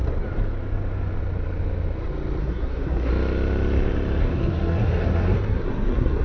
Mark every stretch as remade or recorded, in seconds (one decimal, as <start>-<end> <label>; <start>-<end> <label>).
0.0-2.4 recorded; 2.4-3.1 remade; 3.1-4.2 recorded; 4.2-6.2 remade